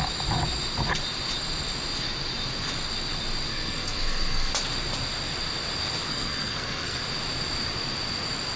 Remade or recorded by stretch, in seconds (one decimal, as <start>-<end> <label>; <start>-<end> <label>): 0.0-3.5 recorded; 3.5-4.5 remade; 4.5-6.1 recorded; 6.1-7.0 remade; 7.0-8.6 recorded